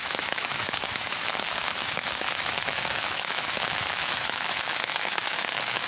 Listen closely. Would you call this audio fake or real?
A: fake